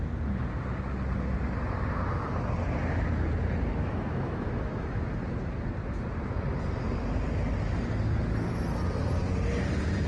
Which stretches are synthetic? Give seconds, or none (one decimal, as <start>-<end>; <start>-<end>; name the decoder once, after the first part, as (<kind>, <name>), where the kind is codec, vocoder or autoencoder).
3.8-5.0 (autoencoder, DAC-VAE)